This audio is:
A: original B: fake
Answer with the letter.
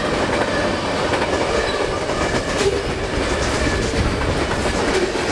A